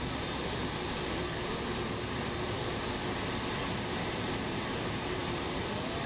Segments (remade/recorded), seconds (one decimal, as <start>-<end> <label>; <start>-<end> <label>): 0.0-0.6 recorded; 0.6-1.2 remade; 1.2-5.2 recorded; 5.2-6.1 remade